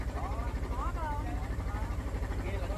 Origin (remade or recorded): remade